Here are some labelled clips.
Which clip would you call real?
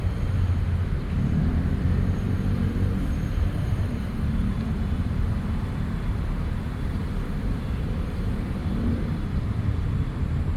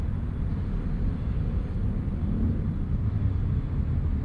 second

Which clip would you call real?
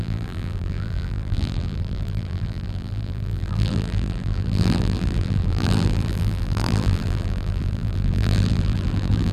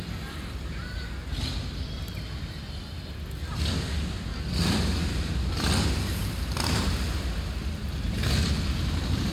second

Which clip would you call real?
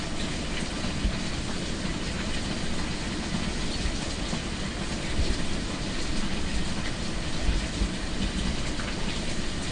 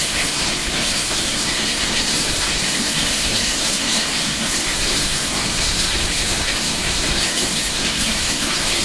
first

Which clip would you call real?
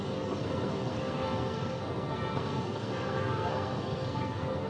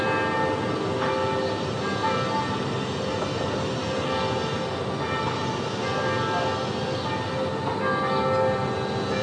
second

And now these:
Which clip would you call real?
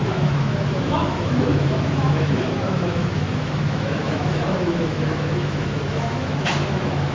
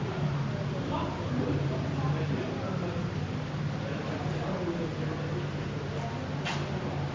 second